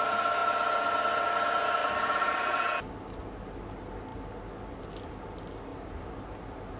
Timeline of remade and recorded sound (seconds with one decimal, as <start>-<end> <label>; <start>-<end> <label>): 0.0-1.8 recorded; 1.8-2.9 remade; 2.9-5.7 recorded; 5.7-6.8 remade